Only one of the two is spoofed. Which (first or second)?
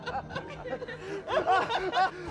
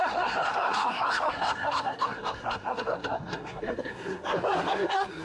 second